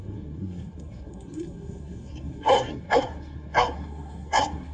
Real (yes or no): no